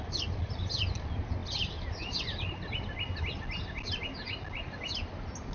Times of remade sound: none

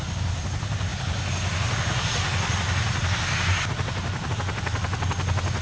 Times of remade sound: none

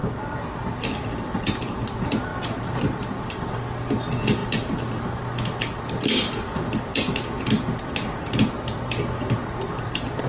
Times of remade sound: 2.3-3.3

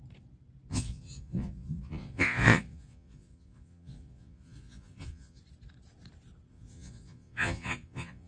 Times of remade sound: 0.7-5.4; 6.5-8.3

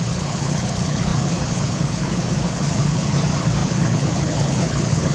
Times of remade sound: 0.0-5.1

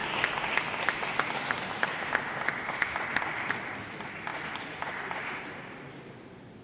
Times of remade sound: none

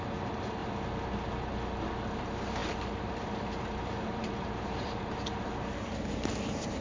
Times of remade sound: 0.0-0.6; 2.2-6.8